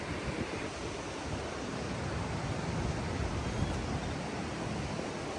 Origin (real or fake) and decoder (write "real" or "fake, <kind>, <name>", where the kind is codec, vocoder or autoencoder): real